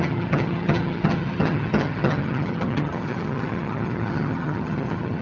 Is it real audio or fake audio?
fake